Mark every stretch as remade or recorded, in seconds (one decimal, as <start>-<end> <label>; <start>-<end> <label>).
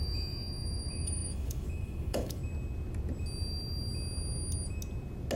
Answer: 0.0-2.4 remade; 2.4-5.4 recorded